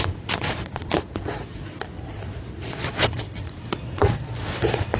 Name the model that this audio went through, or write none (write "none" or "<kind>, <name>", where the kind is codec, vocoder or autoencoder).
vocoder, Vocos